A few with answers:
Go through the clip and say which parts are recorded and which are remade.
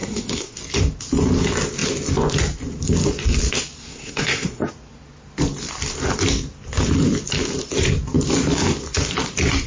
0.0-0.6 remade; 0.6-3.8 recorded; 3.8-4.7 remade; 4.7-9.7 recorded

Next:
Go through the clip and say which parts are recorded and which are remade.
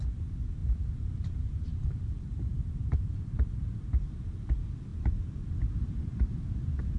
0.0-0.6 recorded; 0.6-3.3 remade; 3.3-4.9 recorded; 4.9-7.0 remade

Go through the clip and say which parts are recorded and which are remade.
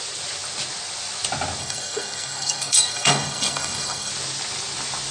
0.0-1.6 recorded; 1.6-4.1 remade; 4.1-5.1 recorded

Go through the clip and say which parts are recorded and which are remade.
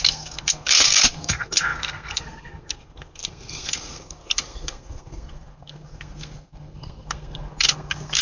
0.0-8.2 remade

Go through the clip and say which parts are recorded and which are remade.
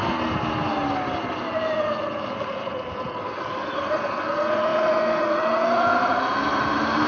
0.0-7.1 recorded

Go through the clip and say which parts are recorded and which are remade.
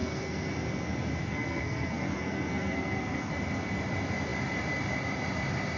0.0-0.5 remade; 0.5-1.2 recorded; 1.2-3.3 remade; 3.3-5.8 recorded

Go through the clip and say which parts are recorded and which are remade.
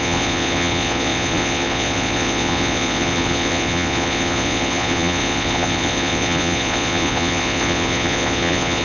0.0-8.8 remade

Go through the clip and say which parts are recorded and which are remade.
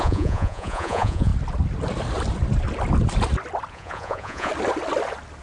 0.0-1.3 remade; 1.3-3.7 recorded; 3.7-4.5 remade; 4.5-5.4 recorded